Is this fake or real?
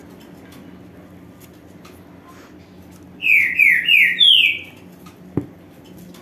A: real